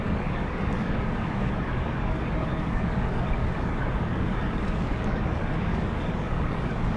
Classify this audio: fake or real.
fake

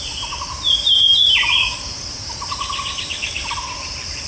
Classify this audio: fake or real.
fake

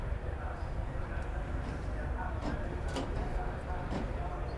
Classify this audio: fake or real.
fake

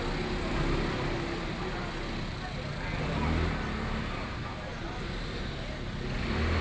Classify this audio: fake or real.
real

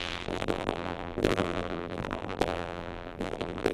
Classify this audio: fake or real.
fake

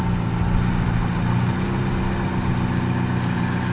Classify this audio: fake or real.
real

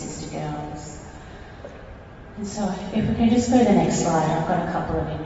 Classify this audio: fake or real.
real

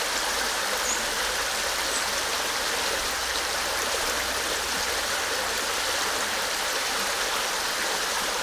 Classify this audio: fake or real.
real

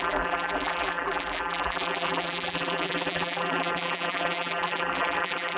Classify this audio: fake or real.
fake